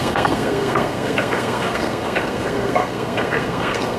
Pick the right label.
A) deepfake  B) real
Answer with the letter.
A